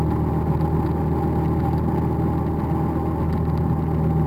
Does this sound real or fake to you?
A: real